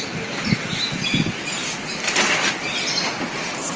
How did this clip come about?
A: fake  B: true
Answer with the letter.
B